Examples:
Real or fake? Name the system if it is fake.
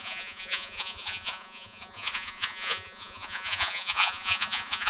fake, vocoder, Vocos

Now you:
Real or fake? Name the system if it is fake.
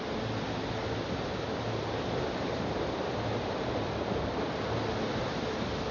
real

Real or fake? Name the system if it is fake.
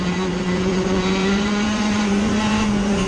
fake, vocoder, Vocos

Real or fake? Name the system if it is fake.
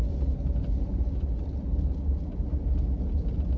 real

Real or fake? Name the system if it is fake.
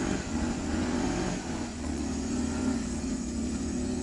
fake, vocoder, Vocos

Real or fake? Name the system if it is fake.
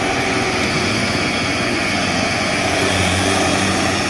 fake, vocoder, Vocos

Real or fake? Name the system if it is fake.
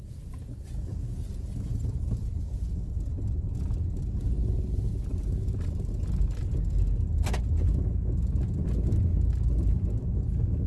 real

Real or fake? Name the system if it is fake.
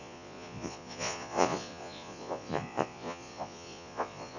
fake, vocoder, Vocos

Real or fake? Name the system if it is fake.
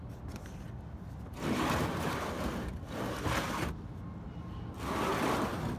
real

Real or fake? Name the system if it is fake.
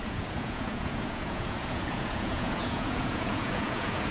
fake, vocoder, Vocos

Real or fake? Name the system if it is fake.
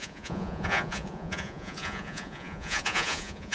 fake, vocoder, Vocos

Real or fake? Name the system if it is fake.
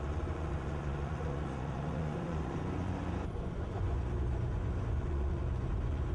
fake, vocoder, Vocos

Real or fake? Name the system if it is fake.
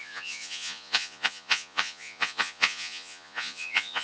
fake, vocoder, Vocos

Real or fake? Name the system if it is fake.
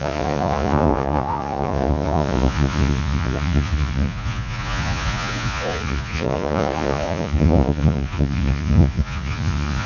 fake, vocoder, Vocos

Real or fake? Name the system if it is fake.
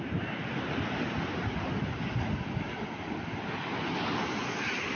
real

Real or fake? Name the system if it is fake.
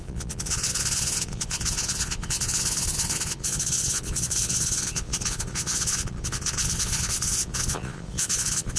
fake, vocoder, Vocos